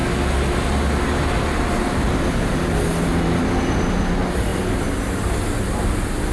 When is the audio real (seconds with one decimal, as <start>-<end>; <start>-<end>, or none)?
0.0-6.3